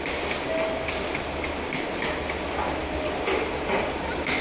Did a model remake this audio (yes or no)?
no